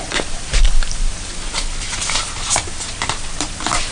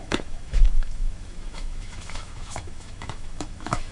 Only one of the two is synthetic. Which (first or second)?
second